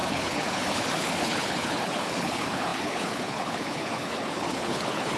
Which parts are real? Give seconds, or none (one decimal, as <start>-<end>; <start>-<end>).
none